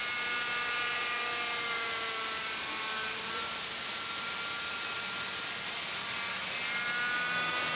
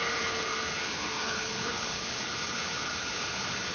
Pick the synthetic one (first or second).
second